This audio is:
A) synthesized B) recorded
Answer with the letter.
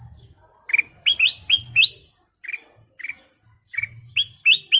B